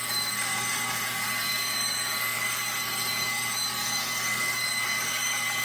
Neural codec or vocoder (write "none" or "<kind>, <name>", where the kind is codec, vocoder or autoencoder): codec, DAC